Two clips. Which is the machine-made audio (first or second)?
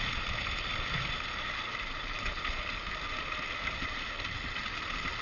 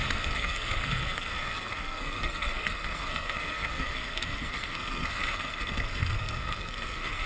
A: second